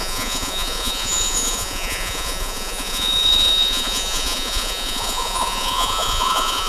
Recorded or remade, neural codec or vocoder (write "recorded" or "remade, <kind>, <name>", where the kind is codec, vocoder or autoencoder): remade, vocoder, Vocos